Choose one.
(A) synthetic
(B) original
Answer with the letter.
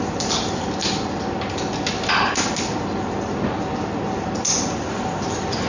B